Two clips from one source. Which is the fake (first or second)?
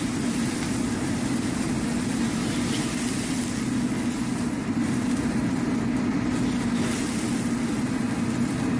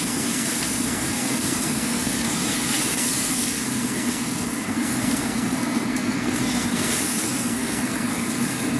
second